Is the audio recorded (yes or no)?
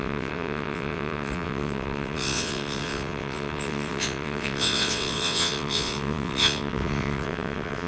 no